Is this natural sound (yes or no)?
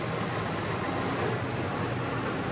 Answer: yes